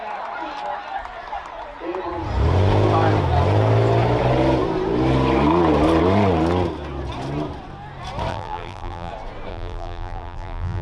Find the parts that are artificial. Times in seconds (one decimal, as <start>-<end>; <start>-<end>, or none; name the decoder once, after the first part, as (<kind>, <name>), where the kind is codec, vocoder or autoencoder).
8.3-9.1 (vocoder, BigVGAN v2); 9.5-10.8